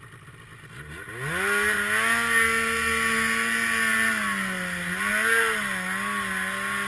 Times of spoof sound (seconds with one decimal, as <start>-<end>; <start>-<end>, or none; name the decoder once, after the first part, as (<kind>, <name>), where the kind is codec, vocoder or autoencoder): none